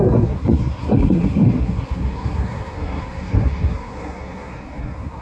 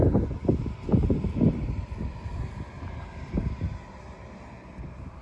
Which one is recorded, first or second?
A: second